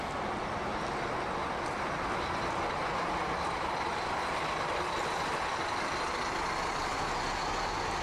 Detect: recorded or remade recorded